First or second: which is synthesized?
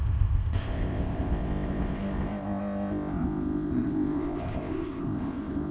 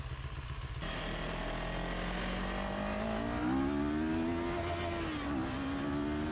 first